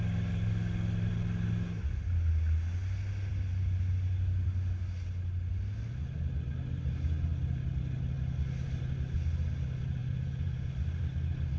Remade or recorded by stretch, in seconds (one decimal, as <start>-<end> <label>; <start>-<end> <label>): 0.0-10.0 recorded; 10.0-10.7 remade; 10.7-11.6 recorded